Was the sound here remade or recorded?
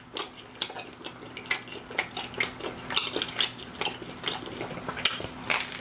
recorded